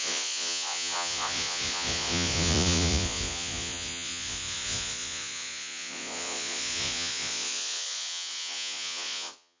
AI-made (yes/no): yes